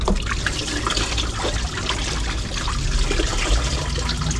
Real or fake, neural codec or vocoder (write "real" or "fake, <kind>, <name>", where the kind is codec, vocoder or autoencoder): real